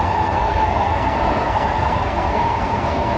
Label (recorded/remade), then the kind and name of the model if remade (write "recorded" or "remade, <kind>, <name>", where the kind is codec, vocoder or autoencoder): remade, codec, SNAC